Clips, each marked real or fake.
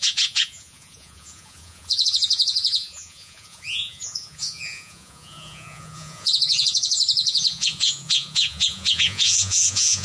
fake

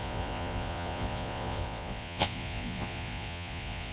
fake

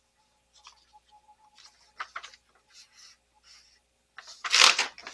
real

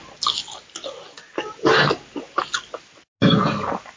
real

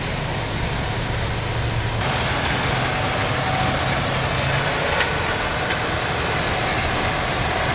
real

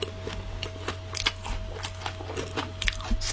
real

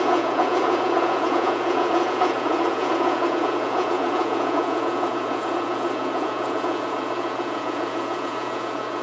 fake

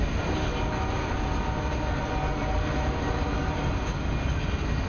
real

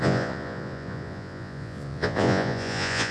fake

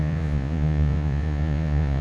fake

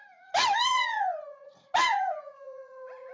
fake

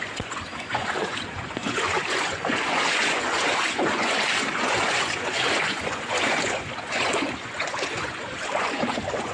fake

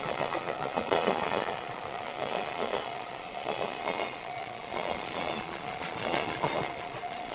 fake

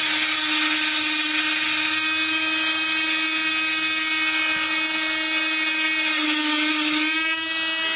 real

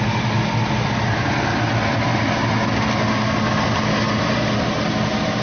real